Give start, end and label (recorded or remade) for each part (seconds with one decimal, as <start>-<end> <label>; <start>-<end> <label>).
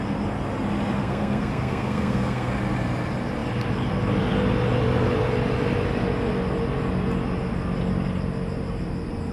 0.0-1.0 recorded; 1.0-2.5 remade; 2.5-9.3 recorded